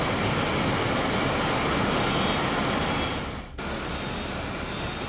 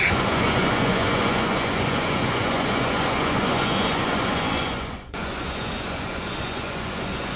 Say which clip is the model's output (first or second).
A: second